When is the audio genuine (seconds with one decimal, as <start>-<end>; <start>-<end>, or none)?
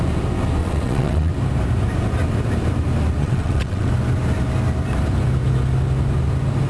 0.0-0.6; 1.3-3.2; 3.9-6.7